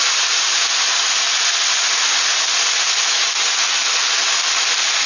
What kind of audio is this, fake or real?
real